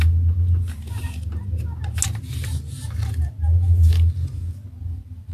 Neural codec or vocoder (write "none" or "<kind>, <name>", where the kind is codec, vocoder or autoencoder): none